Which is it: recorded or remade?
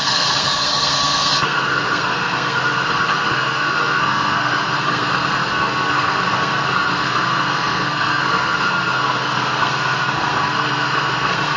remade